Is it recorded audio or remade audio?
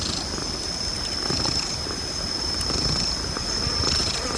recorded